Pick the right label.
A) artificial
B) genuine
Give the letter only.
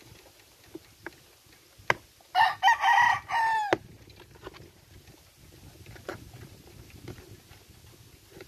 B